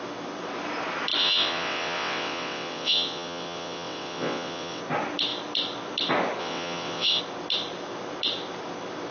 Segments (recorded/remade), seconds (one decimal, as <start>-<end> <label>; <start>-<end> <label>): 0.0-1.2 recorded; 1.2-4.8 remade; 4.8-6.4 recorded; 6.4-7.2 remade; 7.2-9.1 recorded